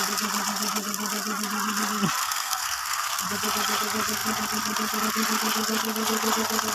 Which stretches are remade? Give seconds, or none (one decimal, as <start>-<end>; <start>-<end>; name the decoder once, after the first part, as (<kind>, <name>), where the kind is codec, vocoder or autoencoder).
2.2-3.2 (codec, SNAC)